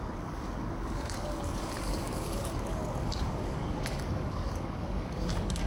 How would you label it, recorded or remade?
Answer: remade